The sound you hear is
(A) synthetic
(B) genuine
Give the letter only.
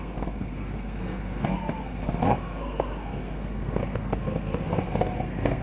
A